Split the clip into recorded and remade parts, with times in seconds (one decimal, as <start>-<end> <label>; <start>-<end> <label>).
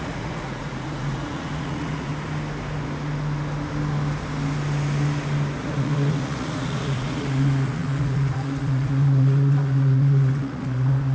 0.0-2.1 remade; 2.1-5.6 recorded; 5.6-11.1 remade